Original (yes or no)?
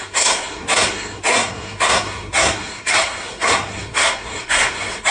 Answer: no